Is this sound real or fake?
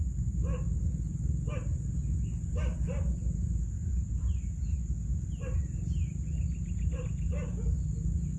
real